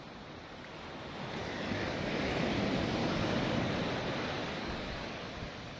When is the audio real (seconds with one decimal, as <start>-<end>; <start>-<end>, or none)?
0.0-1.4; 2.4-3.0; 3.7-4.4; 5.2-5.8